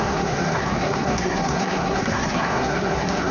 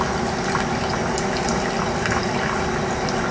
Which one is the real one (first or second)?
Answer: second